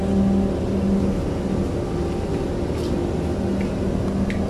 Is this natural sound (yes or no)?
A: yes